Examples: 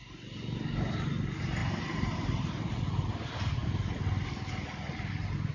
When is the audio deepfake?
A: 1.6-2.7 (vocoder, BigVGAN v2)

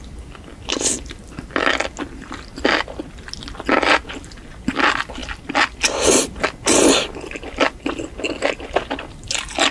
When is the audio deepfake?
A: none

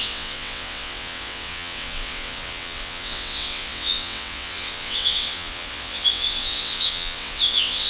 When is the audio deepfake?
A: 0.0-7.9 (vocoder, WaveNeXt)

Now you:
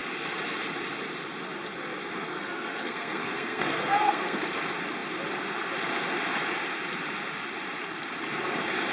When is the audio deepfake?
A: 2.3-4.4 (codec, SNAC)